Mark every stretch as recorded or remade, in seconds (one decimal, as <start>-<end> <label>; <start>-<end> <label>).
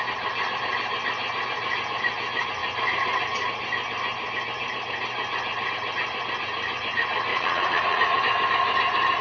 0.0-7.3 recorded; 7.3-8.2 remade; 8.2-9.2 recorded